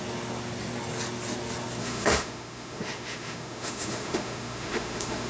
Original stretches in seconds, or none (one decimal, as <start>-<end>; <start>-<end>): 0.0-1.8